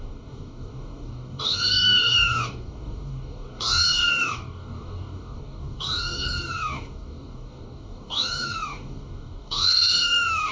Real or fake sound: fake